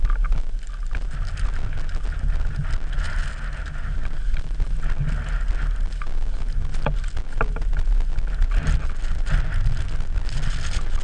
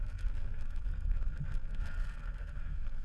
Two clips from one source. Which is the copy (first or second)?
second